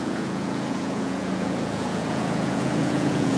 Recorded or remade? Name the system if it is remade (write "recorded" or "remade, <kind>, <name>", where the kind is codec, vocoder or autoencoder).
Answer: remade, vocoder, Vocos